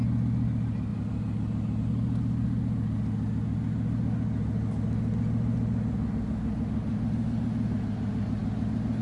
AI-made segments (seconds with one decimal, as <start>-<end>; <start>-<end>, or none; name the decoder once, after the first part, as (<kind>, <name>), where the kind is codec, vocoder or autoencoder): none